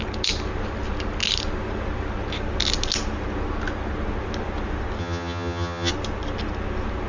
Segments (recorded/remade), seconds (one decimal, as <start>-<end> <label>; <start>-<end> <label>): 0.0-5.0 recorded; 5.0-5.9 remade; 5.9-7.1 recorded